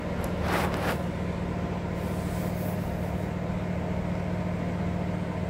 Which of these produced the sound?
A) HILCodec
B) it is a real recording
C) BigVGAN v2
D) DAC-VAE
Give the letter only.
B